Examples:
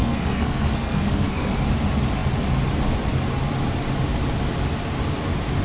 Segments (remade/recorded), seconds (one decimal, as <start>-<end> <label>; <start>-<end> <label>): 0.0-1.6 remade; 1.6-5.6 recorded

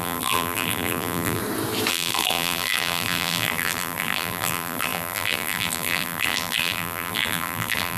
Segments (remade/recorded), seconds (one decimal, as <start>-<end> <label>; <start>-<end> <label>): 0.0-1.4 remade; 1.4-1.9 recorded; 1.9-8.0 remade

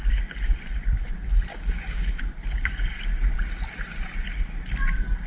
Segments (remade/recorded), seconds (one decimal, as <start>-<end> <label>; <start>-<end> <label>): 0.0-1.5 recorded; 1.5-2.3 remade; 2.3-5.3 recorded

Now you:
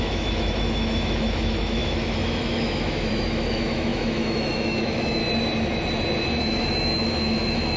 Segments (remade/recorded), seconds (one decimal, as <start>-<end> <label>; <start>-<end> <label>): 0.0-5.2 remade; 5.2-6.4 recorded; 6.4-7.8 remade

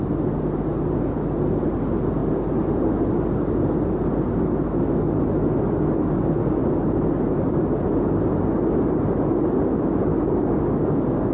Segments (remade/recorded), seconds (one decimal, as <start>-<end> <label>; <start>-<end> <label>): 0.0-10.1 recorded; 10.1-11.3 remade

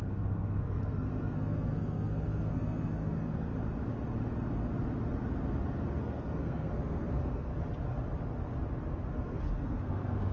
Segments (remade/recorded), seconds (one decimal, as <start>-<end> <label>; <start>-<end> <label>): 0.0-3.5 remade; 3.5-6.0 recorded; 6.0-7.5 remade; 7.5-9.1 recorded; 9.1-10.3 remade